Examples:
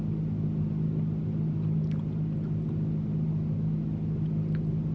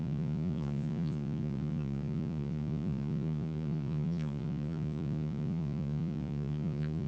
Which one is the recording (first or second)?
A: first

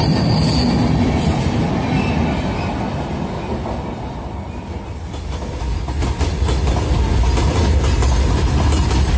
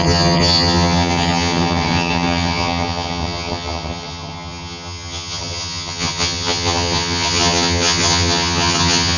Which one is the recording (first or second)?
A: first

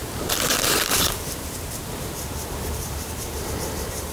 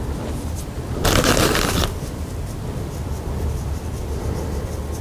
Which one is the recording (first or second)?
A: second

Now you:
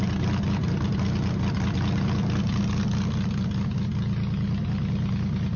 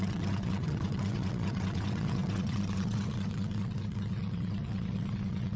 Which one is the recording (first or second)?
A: first